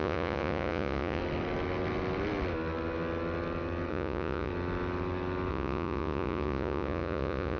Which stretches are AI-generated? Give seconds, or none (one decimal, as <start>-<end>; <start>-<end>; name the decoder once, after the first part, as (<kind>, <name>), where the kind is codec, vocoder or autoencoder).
0.0-1.2 (vocoder, Vocos); 3.9-4.5; 5.5-7.6